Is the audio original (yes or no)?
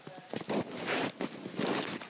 yes